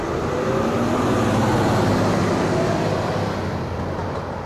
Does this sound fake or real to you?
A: real